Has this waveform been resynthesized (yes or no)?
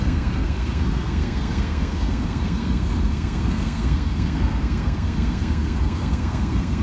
yes